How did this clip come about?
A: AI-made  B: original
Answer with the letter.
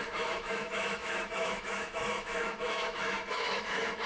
A